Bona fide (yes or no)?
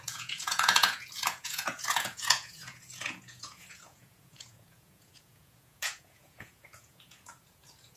no